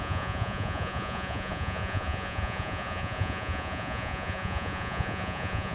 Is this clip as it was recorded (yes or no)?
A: no